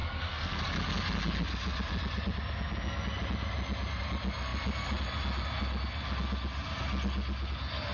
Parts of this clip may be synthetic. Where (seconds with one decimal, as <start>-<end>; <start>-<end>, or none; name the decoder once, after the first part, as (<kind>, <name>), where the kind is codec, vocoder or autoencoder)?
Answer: 0.0-0.6 (codec, SNAC)